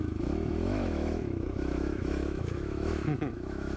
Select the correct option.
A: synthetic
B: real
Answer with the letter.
A